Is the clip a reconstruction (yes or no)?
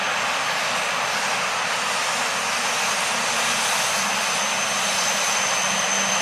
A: no